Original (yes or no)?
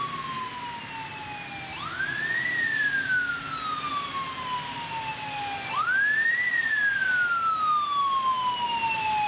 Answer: yes